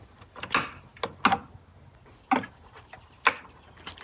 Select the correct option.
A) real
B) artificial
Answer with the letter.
A